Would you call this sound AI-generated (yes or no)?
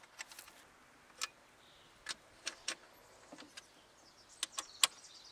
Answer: no